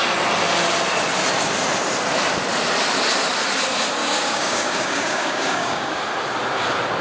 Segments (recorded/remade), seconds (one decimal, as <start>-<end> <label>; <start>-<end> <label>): 0.0-4.0 recorded; 4.0-6.0 remade; 6.0-7.0 recorded